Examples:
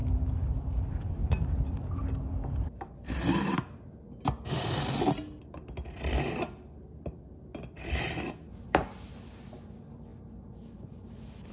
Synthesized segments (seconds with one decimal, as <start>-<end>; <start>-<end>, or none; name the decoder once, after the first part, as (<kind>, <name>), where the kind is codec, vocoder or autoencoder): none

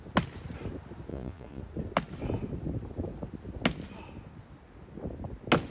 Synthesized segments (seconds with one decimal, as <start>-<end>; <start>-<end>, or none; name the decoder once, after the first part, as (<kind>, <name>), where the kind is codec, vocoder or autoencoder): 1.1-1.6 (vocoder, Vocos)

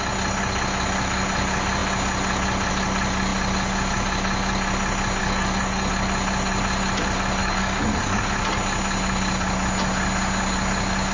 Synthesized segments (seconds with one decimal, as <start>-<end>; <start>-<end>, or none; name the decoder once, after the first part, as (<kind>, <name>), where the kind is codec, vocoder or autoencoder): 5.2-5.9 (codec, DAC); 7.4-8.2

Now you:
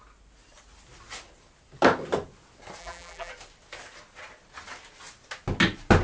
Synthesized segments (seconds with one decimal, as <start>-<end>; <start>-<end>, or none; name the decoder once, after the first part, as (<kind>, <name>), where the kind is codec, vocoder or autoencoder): 2.8-3.3 (vocoder, BigVGAN v2)

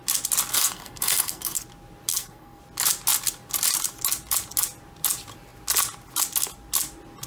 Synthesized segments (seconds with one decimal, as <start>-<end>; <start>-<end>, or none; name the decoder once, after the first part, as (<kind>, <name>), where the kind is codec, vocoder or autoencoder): 0.5-1.6 (codec, SNAC); 2.1-2.6

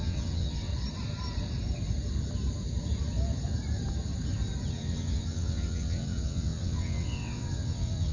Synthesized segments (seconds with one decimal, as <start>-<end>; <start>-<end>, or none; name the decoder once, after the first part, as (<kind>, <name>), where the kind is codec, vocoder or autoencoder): 0.0-0.7 (vocoder, WaveNeXt); 4.7-8.1

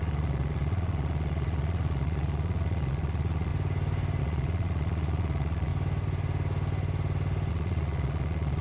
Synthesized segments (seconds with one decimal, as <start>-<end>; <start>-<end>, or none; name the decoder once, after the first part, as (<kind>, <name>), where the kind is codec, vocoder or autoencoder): 0.0-3.5 (vocoder, Vocos); 4.2-5.7; 7.5-8.6

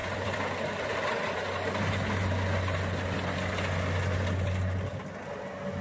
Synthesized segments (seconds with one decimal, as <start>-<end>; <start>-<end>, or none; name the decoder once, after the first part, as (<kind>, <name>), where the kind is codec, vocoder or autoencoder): 0.0-1.1 (vocoder, BigVGAN v2)